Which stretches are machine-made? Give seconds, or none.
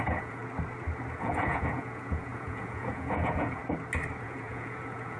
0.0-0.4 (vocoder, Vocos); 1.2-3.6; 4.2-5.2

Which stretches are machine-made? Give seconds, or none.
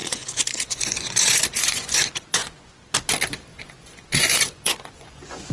0.0-2.7 (vocoder, Vocos); 3.5-5.5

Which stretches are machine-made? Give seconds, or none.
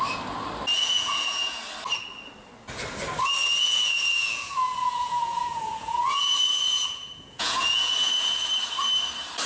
0.8-1.6 (vocoder, Vocos); 3.4-8.5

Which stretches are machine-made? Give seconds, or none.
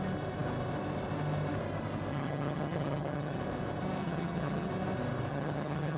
2.1-3.4 (vocoder, HiFi-GAN); 4.0-4.7; 5.3-6.0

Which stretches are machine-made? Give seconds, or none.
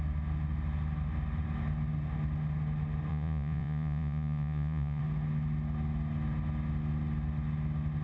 3.1-5.0 (vocoder, Vocos)